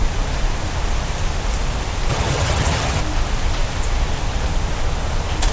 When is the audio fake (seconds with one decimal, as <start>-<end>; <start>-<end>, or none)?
2.1-3.0